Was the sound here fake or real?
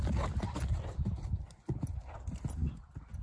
real